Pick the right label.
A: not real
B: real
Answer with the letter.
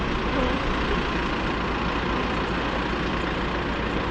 B